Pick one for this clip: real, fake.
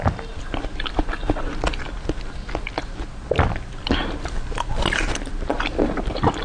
real